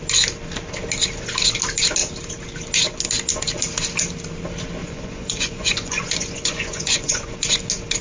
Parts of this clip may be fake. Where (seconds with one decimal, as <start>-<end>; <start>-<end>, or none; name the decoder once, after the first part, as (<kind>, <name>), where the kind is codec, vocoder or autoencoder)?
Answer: 4.8-7.5 (vocoder, Vocos)